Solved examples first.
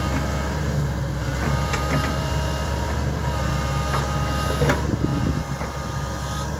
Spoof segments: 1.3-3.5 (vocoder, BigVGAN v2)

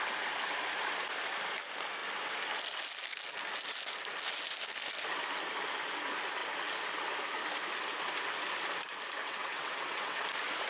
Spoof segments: 9.2-10.2 (vocoder, WaveNeXt)

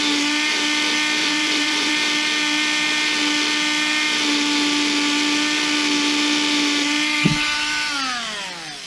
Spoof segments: 1.2-1.9 (vocoder, Vocos)

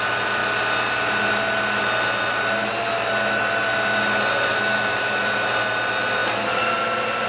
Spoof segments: 4.5-5.2 (autoencoder, DAC-VAE)